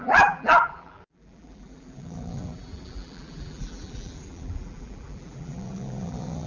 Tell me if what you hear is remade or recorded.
remade